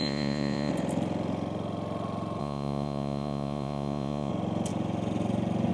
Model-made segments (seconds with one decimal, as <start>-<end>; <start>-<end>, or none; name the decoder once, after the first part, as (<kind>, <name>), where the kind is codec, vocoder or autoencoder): 0.0-0.7 (vocoder, Vocos); 2.4-4.3